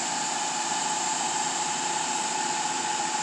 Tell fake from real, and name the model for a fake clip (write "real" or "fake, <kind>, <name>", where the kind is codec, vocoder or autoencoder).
fake, vocoder, BigVGAN v2